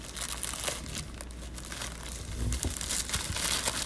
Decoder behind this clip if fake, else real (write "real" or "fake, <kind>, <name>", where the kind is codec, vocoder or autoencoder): real